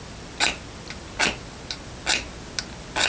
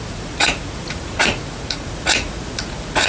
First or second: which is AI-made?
second